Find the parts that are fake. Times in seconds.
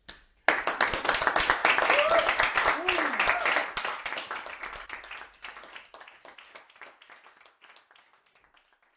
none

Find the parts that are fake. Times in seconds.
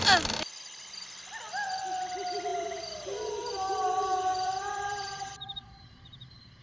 2.5-6.6 (vocoder, BigVGAN v2)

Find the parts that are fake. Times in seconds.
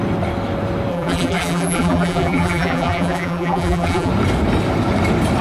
0.9-4.1 (vocoder, BigVGAN v2)